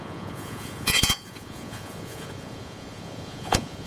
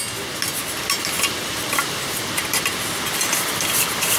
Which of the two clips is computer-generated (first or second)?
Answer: first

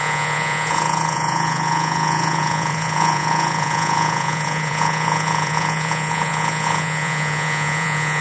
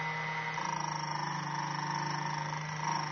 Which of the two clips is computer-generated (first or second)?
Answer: first